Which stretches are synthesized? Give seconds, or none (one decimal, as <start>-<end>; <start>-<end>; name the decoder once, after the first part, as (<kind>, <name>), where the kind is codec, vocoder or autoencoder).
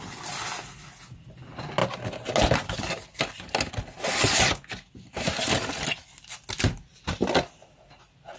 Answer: none